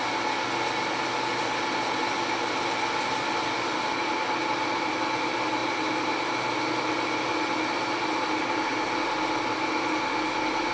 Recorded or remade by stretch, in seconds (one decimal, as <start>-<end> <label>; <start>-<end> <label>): 0.0-10.7 recorded